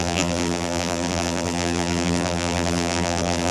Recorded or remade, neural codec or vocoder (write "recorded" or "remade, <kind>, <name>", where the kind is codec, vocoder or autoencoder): remade, vocoder, BigVGAN v2